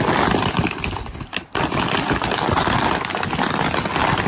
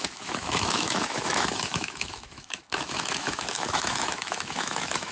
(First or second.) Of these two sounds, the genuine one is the first